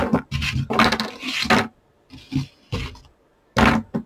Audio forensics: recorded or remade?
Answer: recorded